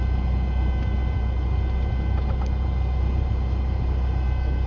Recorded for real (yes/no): yes